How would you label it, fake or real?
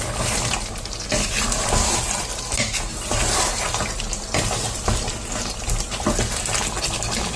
real